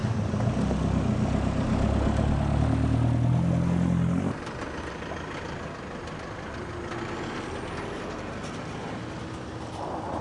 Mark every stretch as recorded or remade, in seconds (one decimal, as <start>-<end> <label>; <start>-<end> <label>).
0.0-10.2 recorded

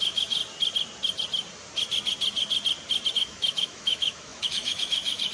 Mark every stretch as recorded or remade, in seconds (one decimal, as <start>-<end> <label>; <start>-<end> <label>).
0.0-0.4 remade; 0.4-3.1 recorded; 3.1-5.3 remade

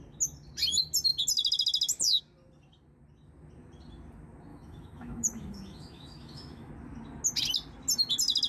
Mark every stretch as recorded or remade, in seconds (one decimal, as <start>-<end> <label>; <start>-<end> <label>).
0.0-4.5 recorded; 4.5-6.7 remade; 6.7-8.5 recorded

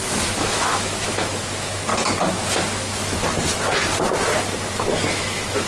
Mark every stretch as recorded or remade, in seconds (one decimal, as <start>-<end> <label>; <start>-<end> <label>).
0.0-1.9 remade; 1.9-5.1 recorded; 5.1-5.7 remade

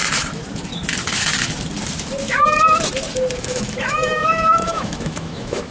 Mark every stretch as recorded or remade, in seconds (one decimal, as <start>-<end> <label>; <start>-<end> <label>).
0.0-3.4 recorded; 3.4-5.7 remade

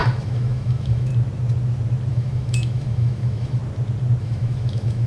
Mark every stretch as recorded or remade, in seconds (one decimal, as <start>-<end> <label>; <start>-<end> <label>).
0.0-1.1 remade; 1.1-2.1 recorded; 2.1-3.6 remade; 3.6-4.2 recorded; 4.2-5.1 remade

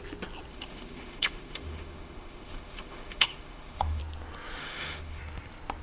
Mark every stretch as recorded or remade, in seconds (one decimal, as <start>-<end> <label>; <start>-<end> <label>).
0.0-0.5 recorded; 0.5-4.0 remade; 4.0-4.6 recorded; 4.6-5.2 remade; 5.2-5.8 recorded

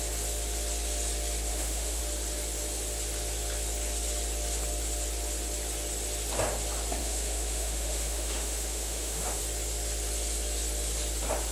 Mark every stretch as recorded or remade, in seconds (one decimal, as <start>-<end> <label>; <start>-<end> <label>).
0.0-1.5 recorded; 1.5-2.0 remade; 2.0-7.0 recorded; 7.0-9.4 remade; 9.4-11.5 recorded